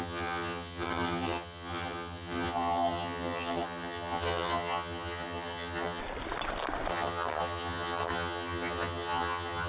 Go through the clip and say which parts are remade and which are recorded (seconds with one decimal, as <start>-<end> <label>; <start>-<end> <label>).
0.0-6.0 remade; 6.0-6.9 recorded; 6.9-9.7 remade